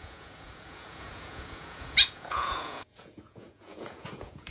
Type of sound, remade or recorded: remade